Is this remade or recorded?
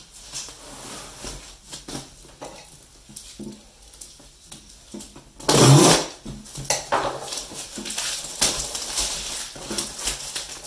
recorded